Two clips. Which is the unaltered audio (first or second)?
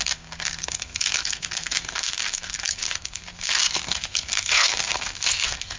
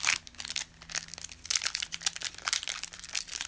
second